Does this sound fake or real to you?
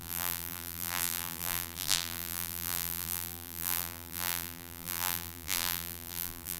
fake